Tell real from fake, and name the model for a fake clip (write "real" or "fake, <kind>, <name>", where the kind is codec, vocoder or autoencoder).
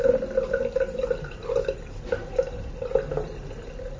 real